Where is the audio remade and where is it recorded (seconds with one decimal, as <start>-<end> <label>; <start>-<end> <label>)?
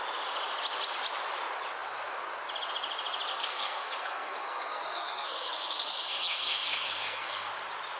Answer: 0.0-3.3 recorded; 3.3-7.5 remade; 7.5-8.0 recorded